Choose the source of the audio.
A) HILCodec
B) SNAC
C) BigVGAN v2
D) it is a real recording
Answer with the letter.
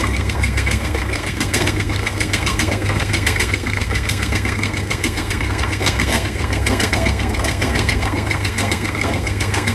B